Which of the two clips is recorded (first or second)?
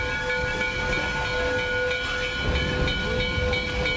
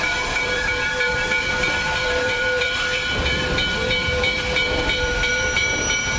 first